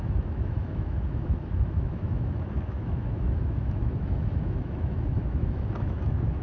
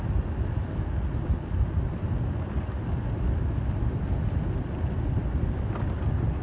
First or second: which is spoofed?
first